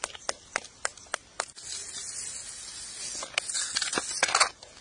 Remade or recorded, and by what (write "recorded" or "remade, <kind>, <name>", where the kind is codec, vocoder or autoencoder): recorded